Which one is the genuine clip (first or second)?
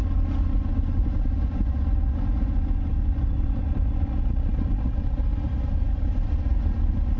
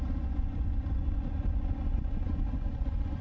first